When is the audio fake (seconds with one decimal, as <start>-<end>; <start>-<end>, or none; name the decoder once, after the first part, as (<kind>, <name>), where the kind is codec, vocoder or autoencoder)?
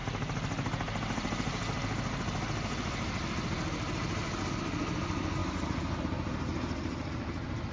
none